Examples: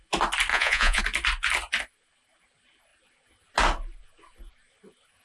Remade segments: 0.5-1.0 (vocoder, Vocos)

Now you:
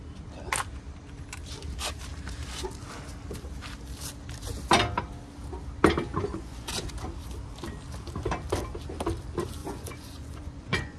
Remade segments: 6.1-6.9 (vocoder, Vocos); 9.6-11.0

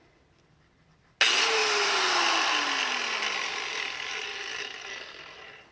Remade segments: none

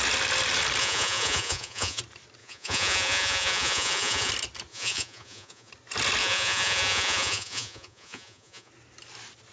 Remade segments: 0.8-2.0 (vocoder, Vocos); 2.4-4.3; 4.7-5.7; 6.2-8.7

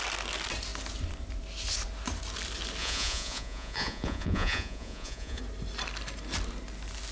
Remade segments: 2.8-5.4 (vocoder, Vocos)

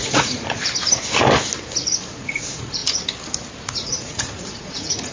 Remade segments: 0.0-0.6 (vocoder, Vocos); 2.1-2.8; 3.7-5.1

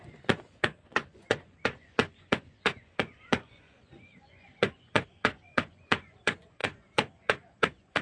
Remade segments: 0.0-8.0 (vocoder, Vocos)